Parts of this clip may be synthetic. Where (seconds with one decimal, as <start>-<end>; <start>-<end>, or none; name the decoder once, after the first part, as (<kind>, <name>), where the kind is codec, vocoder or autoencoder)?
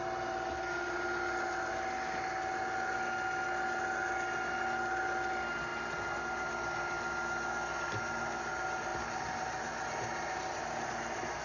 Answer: none